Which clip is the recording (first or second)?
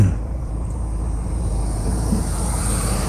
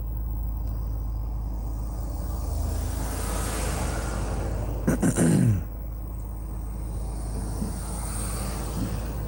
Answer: second